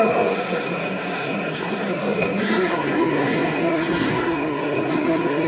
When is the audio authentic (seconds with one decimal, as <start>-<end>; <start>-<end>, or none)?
none